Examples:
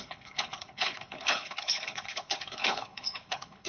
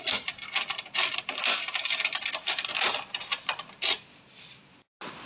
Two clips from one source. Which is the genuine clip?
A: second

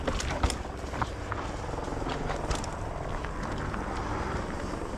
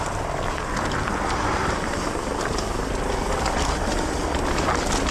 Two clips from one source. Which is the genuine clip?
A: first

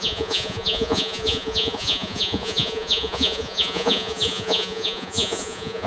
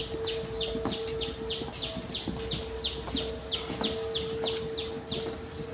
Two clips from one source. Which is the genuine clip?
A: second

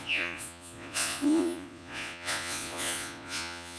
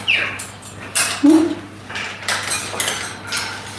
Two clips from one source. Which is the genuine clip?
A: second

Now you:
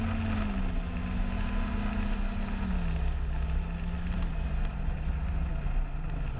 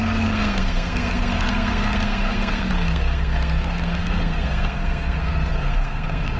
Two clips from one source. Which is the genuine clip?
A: first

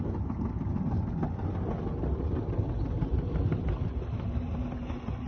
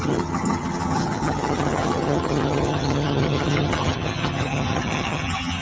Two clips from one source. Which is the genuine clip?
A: first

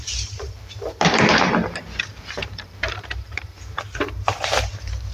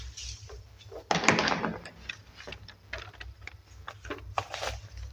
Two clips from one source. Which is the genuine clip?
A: second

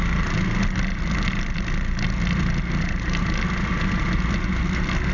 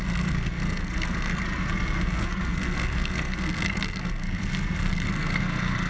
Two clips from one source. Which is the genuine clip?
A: first